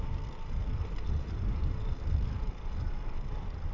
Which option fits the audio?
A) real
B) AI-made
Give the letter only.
A